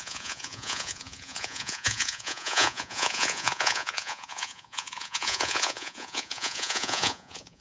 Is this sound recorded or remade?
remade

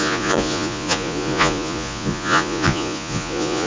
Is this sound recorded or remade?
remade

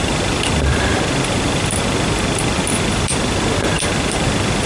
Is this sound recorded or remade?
recorded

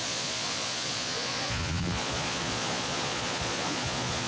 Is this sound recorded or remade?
remade